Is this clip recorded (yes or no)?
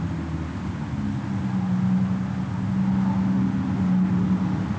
yes